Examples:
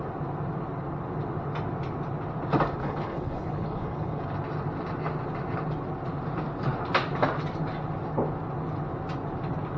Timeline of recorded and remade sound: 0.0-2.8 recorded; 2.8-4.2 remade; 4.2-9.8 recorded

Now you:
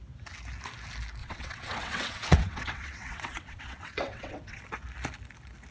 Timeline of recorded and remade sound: 0.0-1.2 recorded; 1.2-4.6 remade; 4.6-5.7 recorded

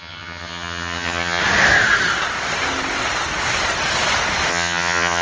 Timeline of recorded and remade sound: 0.0-1.4 remade; 1.4-4.5 recorded; 4.5-5.2 remade

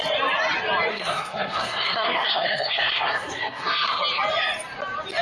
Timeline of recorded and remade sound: 0.0-0.9 recorded; 0.9-4.0 remade; 4.0-5.2 recorded